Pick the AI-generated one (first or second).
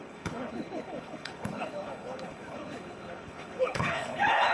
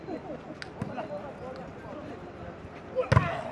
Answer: first